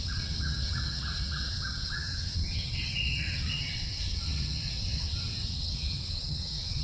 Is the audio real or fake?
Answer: fake